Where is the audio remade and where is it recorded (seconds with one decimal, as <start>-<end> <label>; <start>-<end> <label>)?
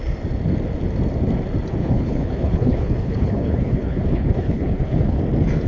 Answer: 0.0-1.8 recorded; 1.8-5.2 remade; 5.2-5.7 recorded